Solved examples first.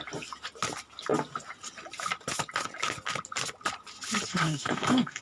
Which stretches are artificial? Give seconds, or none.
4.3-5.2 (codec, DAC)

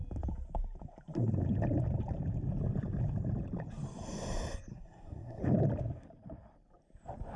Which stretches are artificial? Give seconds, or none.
4.7-5.4 (codec, SNAC)

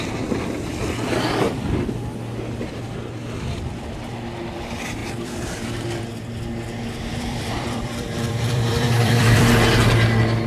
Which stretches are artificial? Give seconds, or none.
5.0-6.1 (vocoder, BigVGAN v2); 7.1-9.5

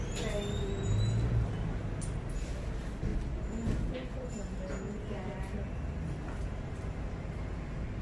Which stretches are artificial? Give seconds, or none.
none